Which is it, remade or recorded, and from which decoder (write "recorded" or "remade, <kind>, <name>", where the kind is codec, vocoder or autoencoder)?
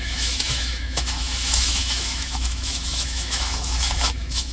remade, autoencoder, DAC-VAE